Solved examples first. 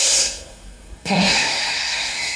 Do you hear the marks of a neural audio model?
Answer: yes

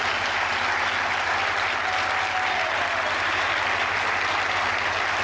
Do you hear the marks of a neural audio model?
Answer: no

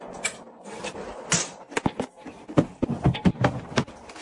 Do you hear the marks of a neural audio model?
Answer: no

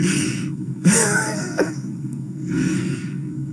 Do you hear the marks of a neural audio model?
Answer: yes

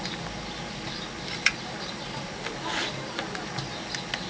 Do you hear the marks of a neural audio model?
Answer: no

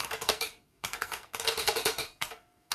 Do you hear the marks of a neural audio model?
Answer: yes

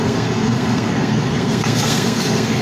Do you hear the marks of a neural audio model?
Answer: yes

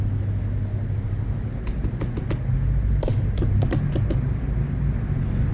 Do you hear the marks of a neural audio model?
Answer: no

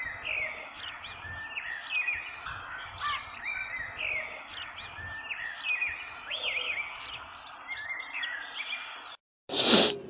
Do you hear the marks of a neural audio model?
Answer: no